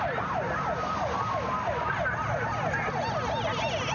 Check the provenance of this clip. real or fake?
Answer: real